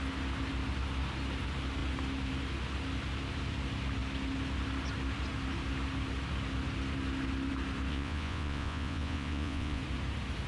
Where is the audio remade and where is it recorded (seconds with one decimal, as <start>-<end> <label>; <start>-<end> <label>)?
0.0-7.9 recorded; 7.9-9.8 remade; 9.8-10.5 recorded

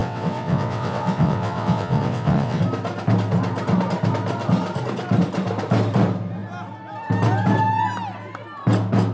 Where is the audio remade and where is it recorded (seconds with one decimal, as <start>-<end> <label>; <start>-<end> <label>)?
0.0-2.6 remade; 2.6-9.1 recorded

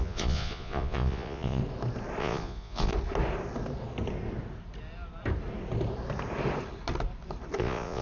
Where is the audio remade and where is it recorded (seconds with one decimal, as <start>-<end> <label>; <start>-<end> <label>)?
0.0-1.6 remade; 1.6-2.2 recorded; 2.2-2.9 remade; 2.9-7.6 recorded; 7.6-8.0 remade

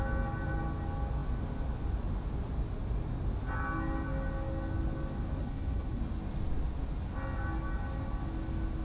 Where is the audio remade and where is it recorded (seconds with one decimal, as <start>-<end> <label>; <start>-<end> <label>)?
0.0-5.4 recorded; 5.4-6.0 remade; 6.0-8.8 recorded

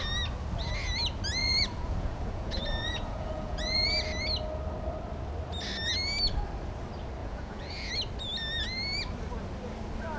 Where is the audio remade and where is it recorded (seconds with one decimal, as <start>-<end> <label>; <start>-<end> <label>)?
0.0-1.4 recorded; 1.4-3.9 remade; 3.9-7.2 recorded; 7.2-7.9 remade; 7.9-10.2 recorded